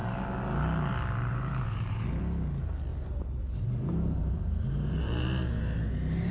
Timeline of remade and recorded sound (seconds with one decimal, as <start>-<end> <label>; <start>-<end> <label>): 0.0-1.3 recorded; 1.3-2.2 remade; 2.2-2.9 recorded; 2.9-4.9 remade; 4.9-6.3 recorded